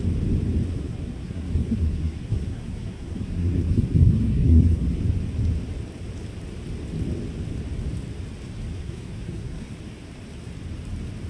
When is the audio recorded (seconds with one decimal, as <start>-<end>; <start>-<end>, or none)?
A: 0.0-0.7; 5.0-8.7; 9.7-11.3